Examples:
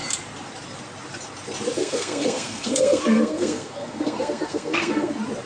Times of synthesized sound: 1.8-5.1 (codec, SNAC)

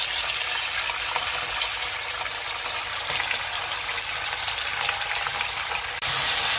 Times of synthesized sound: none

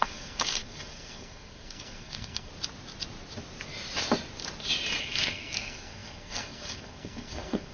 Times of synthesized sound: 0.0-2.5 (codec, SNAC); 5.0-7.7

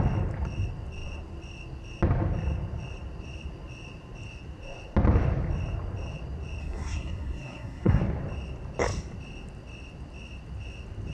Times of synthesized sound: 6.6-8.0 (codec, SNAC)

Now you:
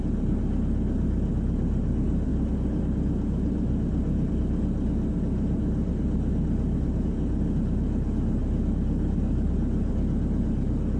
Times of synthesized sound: none